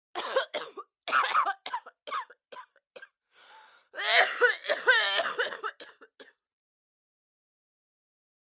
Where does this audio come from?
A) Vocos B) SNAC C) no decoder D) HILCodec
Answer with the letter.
C